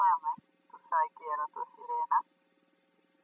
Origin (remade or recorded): recorded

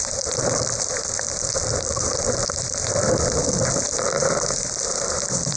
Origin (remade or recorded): remade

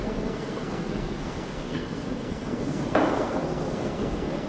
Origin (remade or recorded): remade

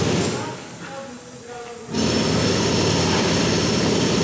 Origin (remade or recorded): recorded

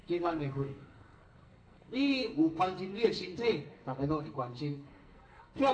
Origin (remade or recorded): remade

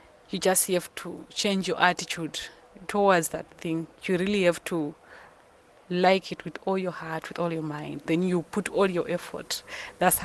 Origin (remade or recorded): recorded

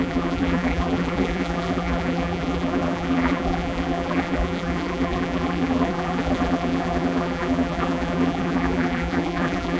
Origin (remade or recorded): remade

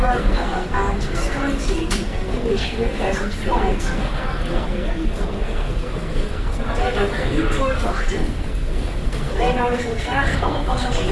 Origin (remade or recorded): remade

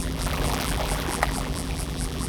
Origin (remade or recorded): remade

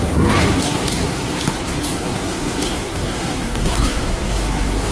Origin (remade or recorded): remade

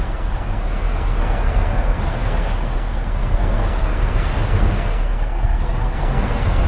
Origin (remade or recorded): remade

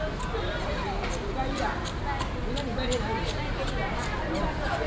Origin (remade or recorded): recorded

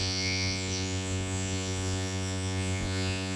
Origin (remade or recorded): remade